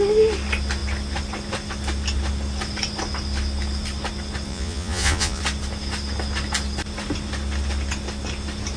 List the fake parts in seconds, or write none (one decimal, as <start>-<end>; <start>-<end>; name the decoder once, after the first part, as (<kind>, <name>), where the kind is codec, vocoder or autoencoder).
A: 4.5-5.4 (vocoder, Vocos)